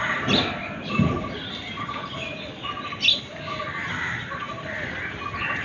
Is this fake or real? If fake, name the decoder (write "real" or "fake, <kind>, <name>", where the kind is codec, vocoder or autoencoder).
real